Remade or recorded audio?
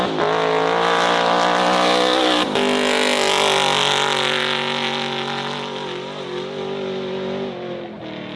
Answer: recorded